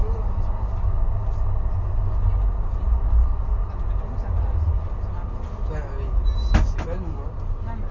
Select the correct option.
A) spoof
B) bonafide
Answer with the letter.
B